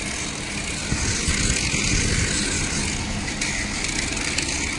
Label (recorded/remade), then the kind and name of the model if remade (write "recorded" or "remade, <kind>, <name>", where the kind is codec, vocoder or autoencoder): recorded